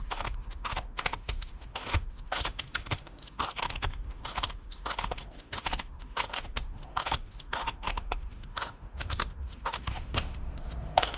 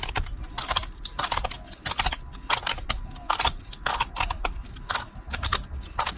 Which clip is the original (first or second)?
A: second